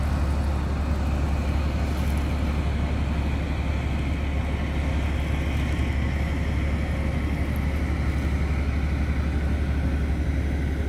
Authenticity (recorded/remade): recorded